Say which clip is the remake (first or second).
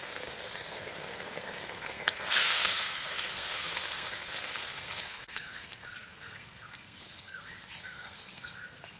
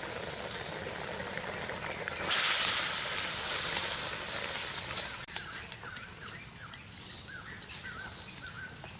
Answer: first